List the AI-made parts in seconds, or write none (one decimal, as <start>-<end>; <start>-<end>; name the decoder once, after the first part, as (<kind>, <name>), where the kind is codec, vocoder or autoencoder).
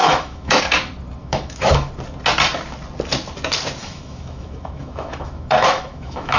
0.0-0.6 (autoencoder, DAC-VAE); 1.2-1.9; 3.8-6.4